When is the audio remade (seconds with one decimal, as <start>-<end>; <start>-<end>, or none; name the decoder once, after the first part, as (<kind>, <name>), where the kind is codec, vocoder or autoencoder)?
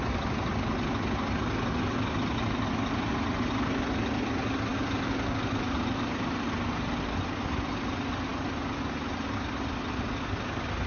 none